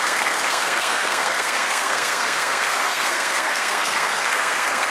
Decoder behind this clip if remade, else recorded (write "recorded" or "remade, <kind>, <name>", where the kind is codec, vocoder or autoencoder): remade, codec, SNAC